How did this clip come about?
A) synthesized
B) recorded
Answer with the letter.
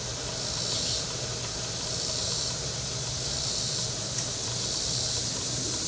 B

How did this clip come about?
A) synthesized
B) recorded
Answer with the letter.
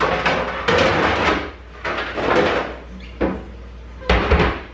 B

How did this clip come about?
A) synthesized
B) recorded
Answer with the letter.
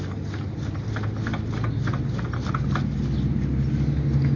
B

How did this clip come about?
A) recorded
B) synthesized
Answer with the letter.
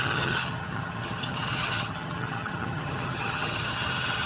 B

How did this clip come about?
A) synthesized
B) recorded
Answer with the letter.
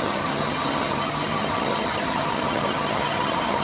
A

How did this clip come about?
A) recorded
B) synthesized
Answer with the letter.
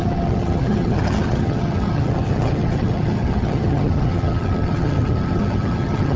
B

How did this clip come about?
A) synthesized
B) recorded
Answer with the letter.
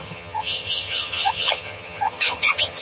A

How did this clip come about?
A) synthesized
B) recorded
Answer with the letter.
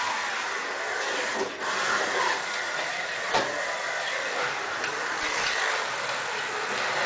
B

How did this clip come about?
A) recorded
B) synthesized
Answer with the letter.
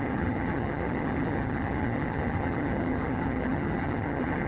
B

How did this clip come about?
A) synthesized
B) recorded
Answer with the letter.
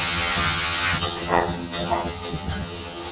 A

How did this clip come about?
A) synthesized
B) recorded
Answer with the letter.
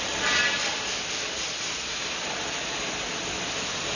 B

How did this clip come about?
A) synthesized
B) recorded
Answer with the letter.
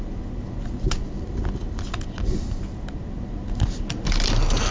B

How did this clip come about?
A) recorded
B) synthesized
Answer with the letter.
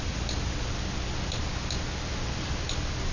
A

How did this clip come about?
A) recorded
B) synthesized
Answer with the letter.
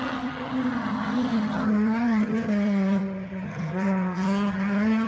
B